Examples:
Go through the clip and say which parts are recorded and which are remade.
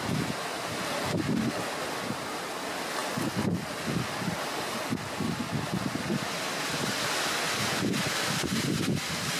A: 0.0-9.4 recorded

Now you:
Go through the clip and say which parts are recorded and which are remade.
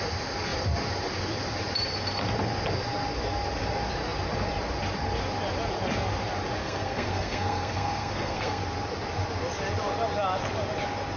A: 0.0-6.6 recorded; 6.6-8.6 remade; 8.6-11.2 recorded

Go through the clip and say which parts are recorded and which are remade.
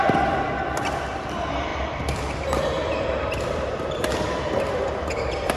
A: 0.0-5.6 recorded